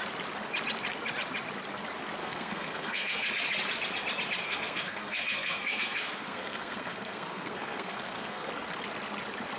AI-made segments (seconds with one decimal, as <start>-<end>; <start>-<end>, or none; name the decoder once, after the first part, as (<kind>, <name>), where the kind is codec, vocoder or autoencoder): 2.2-3.3 (codec, SNAC); 4.4-8.5